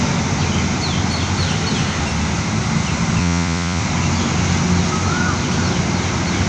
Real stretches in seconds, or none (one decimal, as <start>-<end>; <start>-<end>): 0.0-3.2; 3.8-6.5